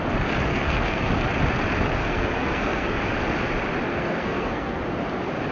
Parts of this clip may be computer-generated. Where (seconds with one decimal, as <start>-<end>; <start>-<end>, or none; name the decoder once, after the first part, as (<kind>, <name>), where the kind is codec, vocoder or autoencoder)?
0.5-1.1 (codec, SNAC); 2.0-3.0; 3.9-4.8